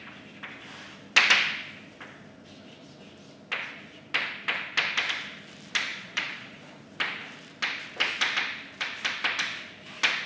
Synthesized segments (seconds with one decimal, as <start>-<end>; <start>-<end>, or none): 5.9-6.8

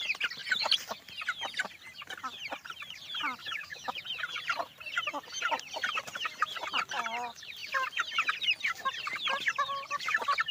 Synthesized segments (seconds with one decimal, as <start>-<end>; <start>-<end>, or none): 3.4-4.0